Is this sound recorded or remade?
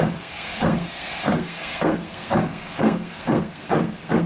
remade